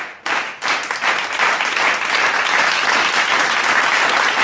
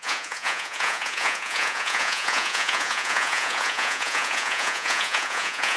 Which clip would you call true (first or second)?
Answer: first